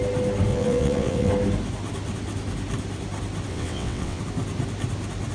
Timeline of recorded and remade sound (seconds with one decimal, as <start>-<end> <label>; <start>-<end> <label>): 0.0-0.5 recorded; 0.5-1.3 remade; 1.3-3.5 recorded; 3.5-4.2 remade; 4.2-5.3 recorded